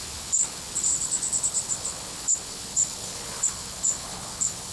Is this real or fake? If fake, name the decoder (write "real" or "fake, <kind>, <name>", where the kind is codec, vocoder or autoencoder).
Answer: fake, codec, HILCodec